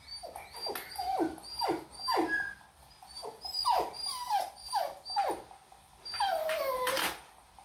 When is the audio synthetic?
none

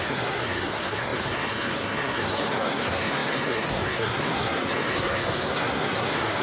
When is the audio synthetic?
0.0-6.4 (codec, SNAC)